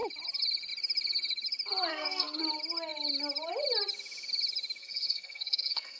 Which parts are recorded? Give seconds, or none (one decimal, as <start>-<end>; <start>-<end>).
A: 0.0-1.9; 2.4-4.8